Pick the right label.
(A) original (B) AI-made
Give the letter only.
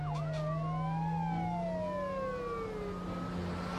A